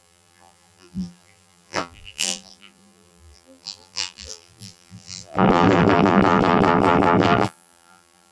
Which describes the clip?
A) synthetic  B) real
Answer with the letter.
A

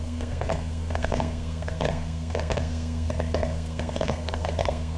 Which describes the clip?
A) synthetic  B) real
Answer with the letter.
A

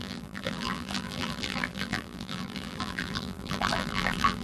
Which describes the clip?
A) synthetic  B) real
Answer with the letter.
A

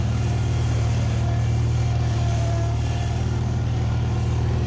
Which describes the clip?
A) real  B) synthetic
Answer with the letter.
B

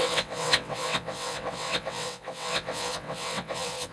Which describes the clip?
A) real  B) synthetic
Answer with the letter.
B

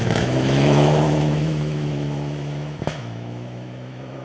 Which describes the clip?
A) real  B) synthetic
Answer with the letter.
B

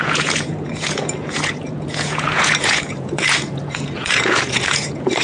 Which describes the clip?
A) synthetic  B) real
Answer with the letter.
A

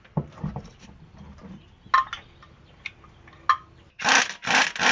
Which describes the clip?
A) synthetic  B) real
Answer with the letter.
B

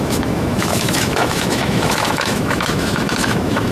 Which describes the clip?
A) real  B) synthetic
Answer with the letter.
B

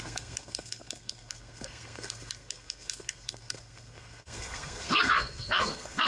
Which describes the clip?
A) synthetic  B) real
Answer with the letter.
A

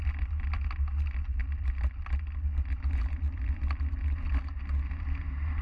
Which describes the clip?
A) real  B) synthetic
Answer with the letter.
A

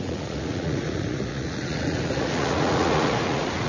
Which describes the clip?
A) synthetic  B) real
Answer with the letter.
A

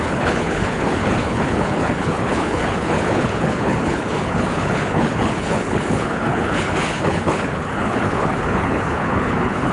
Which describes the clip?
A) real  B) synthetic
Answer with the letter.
B